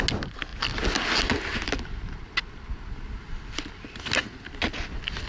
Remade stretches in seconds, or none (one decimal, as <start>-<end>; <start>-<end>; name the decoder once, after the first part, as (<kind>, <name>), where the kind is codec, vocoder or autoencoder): none